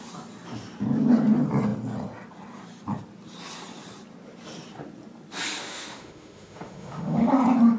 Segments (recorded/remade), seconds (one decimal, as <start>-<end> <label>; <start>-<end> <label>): 0.0-5.6 recorded; 5.6-7.3 remade; 7.3-7.8 recorded

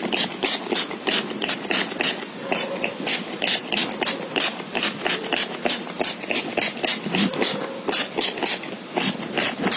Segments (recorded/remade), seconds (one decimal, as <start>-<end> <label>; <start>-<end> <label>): 0.0-9.8 recorded

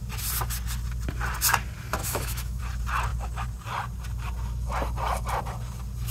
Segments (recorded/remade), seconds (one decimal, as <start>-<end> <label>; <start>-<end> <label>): 0.0-2.0 recorded; 2.0-2.6 remade; 2.6-6.1 recorded

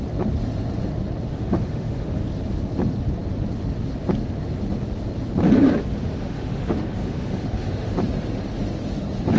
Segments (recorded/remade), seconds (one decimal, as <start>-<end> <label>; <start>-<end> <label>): 0.0-1.3 recorded; 1.3-2.2 remade; 2.2-6.0 recorded; 6.0-7.9 remade; 7.9-9.4 recorded

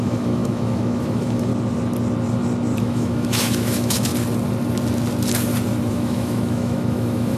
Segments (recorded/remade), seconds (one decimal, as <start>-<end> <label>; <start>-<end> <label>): 0.0-1.5 remade; 1.5-2.8 recorded; 2.8-4.1 remade; 4.1-5.9 recorded; 5.9-7.4 remade

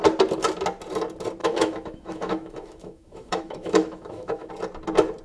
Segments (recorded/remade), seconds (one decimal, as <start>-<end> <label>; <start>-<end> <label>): 0.0-1.4 recorded; 1.4-4.5 remade; 4.5-5.2 recorded

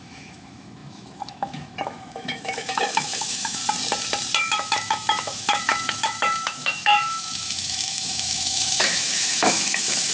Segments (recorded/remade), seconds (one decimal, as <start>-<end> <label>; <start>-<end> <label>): 0.0-3.6 remade; 3.6-4.4 recorded; 4.4-10.1 remade

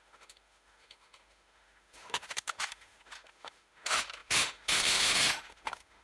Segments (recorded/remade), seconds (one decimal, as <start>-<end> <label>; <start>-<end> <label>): 0.0-6.0 remade